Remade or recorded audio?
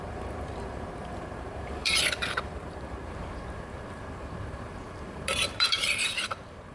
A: remade